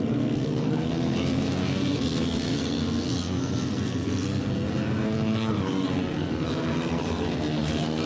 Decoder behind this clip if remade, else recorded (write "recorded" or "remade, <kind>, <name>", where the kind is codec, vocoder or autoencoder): remade, codec, SNAC